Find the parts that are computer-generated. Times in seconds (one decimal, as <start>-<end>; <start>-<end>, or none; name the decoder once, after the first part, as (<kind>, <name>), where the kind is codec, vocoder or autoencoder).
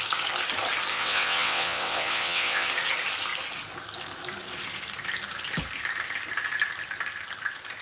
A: 0.9-2.7 (vocoder, WaveNeXt)